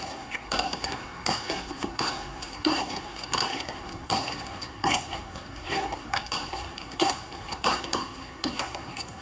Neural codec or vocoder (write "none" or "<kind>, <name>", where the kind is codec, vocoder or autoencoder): codec, SNAC